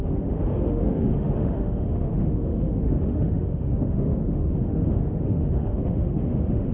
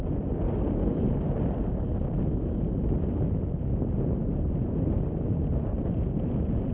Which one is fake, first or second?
first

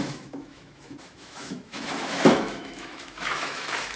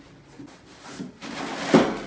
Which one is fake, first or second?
first